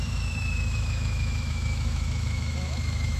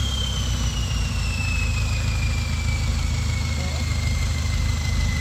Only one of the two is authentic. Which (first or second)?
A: second